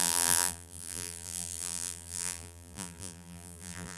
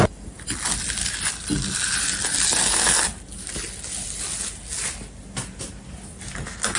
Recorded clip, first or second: second